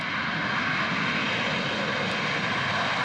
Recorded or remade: recorded